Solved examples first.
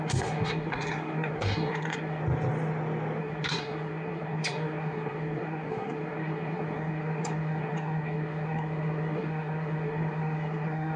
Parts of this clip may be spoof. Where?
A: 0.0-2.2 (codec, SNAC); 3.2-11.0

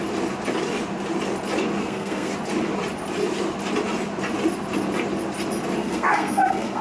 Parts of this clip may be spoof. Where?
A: 1.8-2.3 (codec, SNAC); 5.8-6.8